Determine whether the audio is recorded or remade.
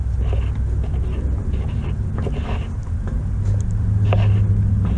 recorded